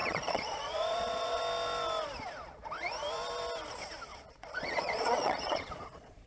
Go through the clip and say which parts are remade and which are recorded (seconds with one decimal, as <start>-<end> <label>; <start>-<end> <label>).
0.0-1.4 remade; 1.4-4.1 recorded; 4.1-6.3 remade